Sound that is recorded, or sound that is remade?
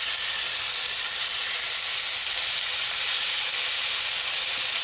recorded